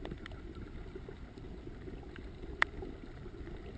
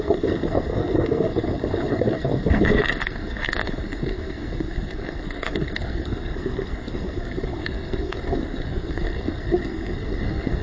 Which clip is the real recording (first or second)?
first